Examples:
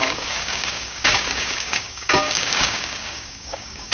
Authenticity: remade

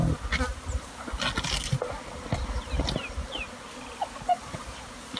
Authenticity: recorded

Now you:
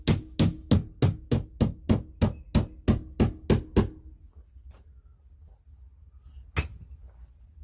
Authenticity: recorded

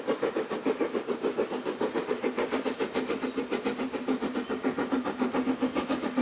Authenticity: recorded